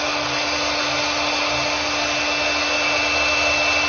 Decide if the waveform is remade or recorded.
recorded